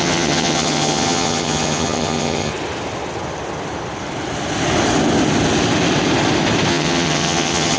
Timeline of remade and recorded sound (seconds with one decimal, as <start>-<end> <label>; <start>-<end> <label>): 0.0-2.5 remade; 2.5-6.7 recorded; 6.7-7.8 remade